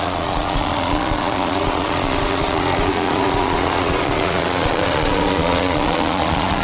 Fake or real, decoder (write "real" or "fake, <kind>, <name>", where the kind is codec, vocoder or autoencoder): fake, vocoder, Vocos